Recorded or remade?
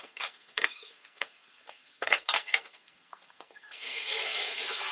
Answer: remade